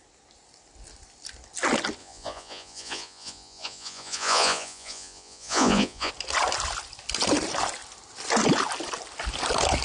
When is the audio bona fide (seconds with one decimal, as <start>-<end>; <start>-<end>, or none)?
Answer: 0.0-2.0; 6.1-9.8